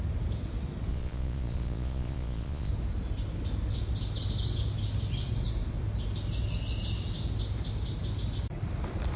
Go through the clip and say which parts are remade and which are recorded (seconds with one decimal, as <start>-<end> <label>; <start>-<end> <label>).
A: 0.0-0.9 recorded; 0.9-2.7 remade; 2.7-9.2 recorded